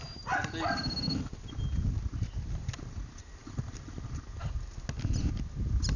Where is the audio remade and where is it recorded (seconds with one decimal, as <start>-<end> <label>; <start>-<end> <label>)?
0.0-6.0 recorded